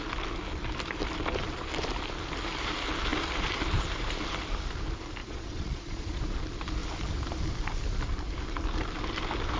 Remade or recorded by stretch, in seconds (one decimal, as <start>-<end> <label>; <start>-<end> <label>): 0.0-5.2 recorded; 5.2-6.2 remade; 6.2-9.6 recorded